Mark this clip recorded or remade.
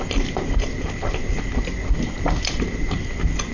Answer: recorded